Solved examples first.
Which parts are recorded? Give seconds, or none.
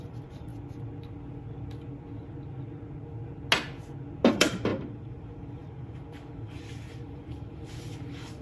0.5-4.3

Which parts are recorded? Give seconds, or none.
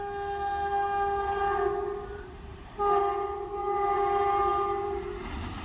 0.0-2.5; 3.0-3.6; 5.0-5.6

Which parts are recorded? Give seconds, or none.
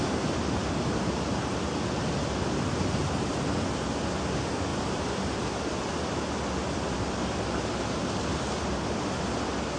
0.0-0.6; 1.5-9.8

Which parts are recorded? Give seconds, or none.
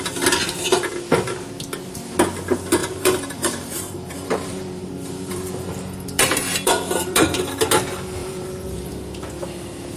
0.0-2.8; 7.6-8.2; 8.9-10.0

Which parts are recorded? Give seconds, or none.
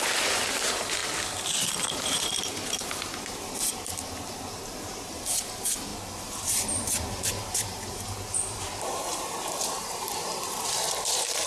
1.0-1.5; 5.9-6.4